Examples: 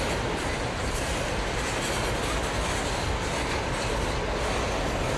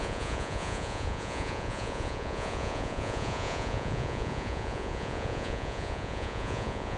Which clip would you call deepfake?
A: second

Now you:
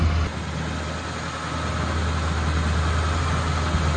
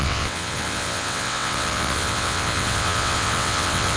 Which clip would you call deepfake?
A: second